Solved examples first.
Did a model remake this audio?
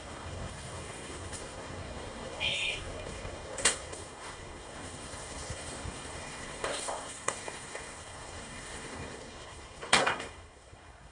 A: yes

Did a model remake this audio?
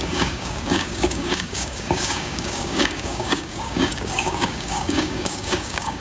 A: yes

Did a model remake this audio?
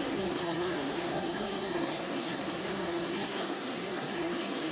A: yes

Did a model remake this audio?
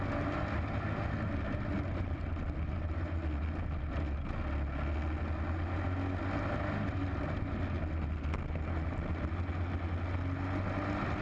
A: no